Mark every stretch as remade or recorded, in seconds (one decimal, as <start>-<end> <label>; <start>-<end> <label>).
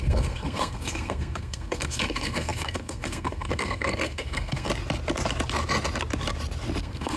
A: 0.0-4.7 remade; 4.7-6.8 recorded; 6.8-7.2 remade